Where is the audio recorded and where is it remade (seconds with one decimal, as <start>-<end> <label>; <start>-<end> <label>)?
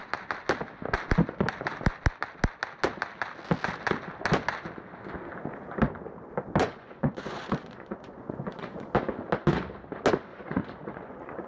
0.0-6.6 recorded; 6.6-8.9 remade; 8.9-10.3 recorded; 10.3-11.5 remade